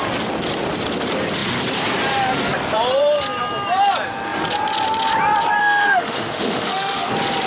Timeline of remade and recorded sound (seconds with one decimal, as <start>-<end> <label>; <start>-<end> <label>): 0.0-5.6 recorded; 5.6-7.1 remade; 7.1-7.5 recorded